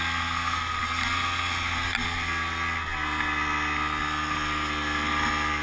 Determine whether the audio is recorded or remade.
recorded